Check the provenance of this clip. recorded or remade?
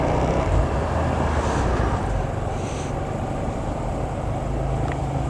remade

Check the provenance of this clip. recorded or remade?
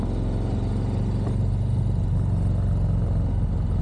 recorded